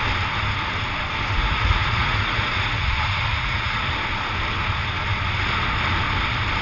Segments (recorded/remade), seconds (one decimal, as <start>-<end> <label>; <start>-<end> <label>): 0.0-1.4 recorded; 1.4-2.9 remade; 2.9-3.3 recorded; 3.3-3.8 remade; 3.8-6.6 recorded